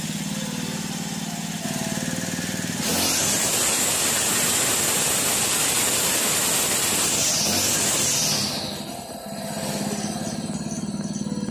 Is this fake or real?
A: real